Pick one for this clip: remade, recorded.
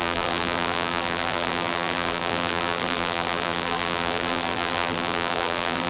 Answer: remade